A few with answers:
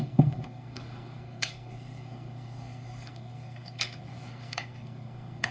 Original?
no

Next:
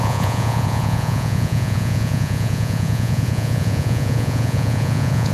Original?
no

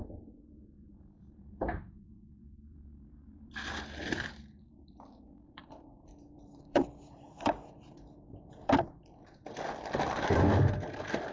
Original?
no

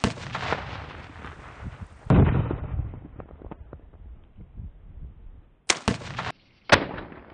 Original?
yes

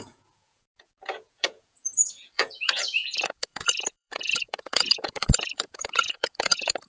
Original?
no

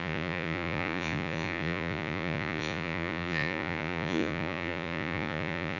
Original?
no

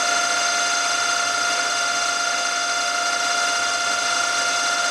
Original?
yes